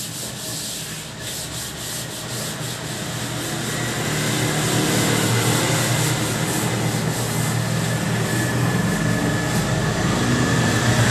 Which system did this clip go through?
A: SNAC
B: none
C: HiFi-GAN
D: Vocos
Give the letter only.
B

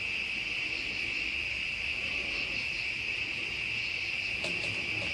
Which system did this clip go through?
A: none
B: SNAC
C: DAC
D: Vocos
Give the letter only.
A